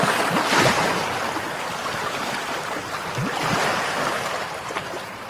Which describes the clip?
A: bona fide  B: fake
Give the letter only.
A